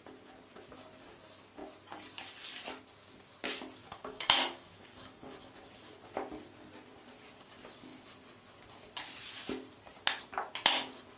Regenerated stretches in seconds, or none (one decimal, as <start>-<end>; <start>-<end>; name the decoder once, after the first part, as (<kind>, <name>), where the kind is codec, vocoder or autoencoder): 3.8-5.5 (codec, DAC)